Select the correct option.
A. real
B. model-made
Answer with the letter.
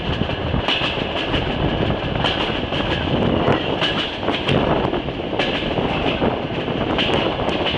A